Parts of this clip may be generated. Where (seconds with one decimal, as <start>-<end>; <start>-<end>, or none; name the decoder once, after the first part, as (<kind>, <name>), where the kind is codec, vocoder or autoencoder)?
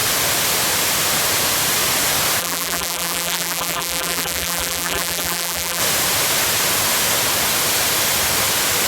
2.4-5.8 (vocoder, BigVGAN v2)